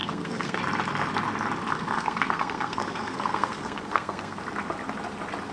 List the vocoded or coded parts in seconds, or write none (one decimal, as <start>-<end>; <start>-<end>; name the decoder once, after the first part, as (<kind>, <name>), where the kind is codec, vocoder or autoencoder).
0.0-0.6 (codec, SNAC); 1.7-4.4